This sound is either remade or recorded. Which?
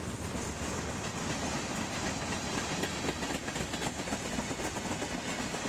recorded